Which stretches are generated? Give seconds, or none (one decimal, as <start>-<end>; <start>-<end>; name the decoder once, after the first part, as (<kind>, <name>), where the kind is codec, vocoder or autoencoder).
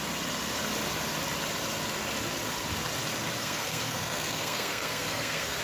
3.4-5.6 (codec, SNAC)